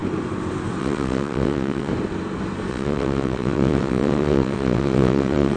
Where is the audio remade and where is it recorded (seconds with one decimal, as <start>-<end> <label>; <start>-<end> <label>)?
0.0-0.8 recorded; 0.8-1.9 remade; 1.9-2.7 recorded; 2.7-5.6 remade